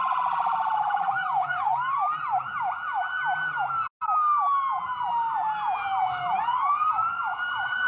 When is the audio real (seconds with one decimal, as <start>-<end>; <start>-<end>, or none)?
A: 1.7-6.4